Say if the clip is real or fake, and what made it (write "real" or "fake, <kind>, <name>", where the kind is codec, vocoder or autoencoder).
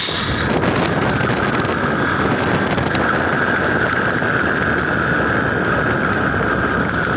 real